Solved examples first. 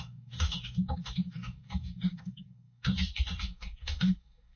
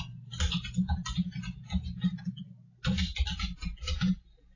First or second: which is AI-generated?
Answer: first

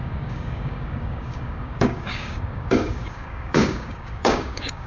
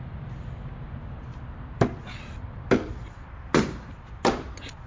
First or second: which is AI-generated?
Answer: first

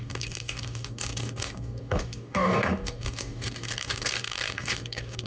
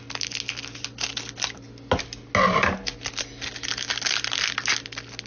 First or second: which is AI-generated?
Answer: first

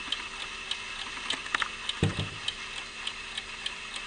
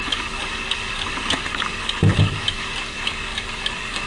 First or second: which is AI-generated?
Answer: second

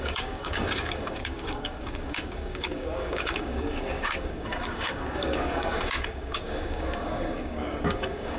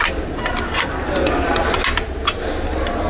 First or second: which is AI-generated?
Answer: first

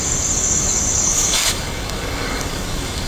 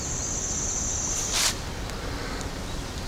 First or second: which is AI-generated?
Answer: first